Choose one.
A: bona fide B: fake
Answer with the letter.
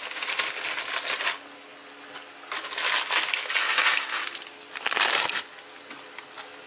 A